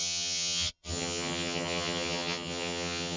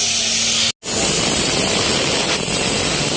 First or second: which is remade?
first